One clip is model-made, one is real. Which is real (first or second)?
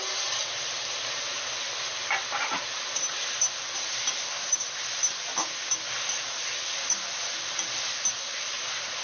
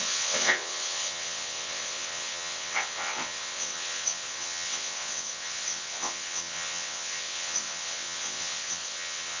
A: first